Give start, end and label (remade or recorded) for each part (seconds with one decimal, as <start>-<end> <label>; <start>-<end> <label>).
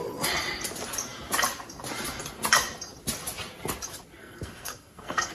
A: 0.0-4.2 recorded; 4.2-5.3 remade